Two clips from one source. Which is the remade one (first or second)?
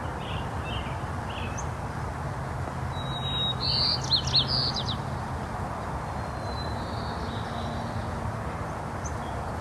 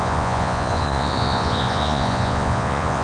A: second